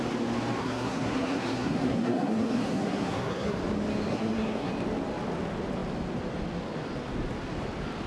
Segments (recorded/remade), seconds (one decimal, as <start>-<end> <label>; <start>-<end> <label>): 0.0-0.6 recorded; 0.6-3.6 remade; 3.6-4.1 recorded; 4.1-4.7 remade; 4.7-8.1 recorded